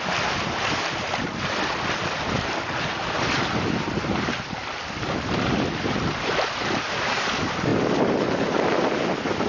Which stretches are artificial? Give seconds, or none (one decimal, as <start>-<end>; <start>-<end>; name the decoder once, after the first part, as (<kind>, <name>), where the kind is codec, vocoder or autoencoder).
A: none